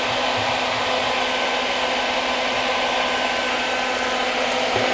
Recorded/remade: recorded